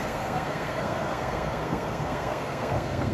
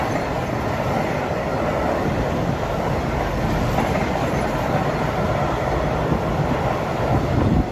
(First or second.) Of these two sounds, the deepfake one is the first